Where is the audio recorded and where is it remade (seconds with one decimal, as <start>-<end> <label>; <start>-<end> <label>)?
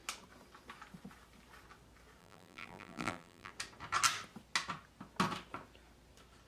0.0-2.2 recorded; 2.2-3.5 remade; 3.5-6.5 recorded